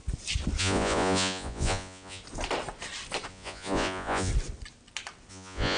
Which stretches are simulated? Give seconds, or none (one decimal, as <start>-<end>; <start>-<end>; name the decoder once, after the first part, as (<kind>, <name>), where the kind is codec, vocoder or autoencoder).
0.6-2.2 (vocoder, Vocos); 3.3-4.3; 5.3-5.8